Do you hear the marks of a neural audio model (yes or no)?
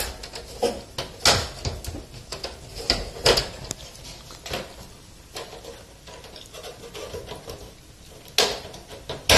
no